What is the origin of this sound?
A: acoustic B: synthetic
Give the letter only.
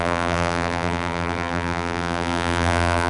B